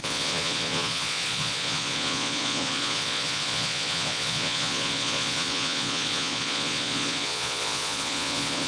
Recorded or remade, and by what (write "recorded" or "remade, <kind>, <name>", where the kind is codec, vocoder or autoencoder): remade, vocoder, Vocos